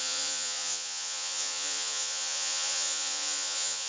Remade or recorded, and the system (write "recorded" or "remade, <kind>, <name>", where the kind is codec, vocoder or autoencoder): remade, vocoder, Vocos